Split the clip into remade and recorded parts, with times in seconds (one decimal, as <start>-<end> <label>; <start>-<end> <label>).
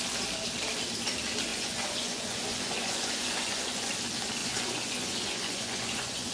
0.0-1.5 recorded; 1.5-3.9 remade; 3.9-4.4 recorded; 4.4-6.3 remade